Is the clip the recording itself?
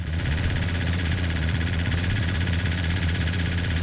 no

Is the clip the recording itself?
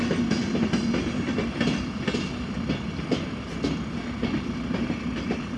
yes